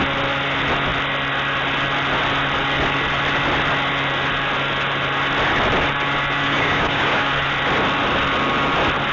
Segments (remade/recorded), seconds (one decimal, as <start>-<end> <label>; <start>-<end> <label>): 0.0-6.4 recorded; 6.4-7.3 remade; 7.3-9.1 recorded